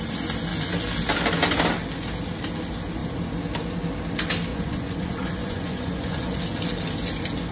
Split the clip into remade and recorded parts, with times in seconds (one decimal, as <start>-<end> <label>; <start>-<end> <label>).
0.0-4.5 recorded; 4.5-6.4 remade; 6.4-7.5 recorded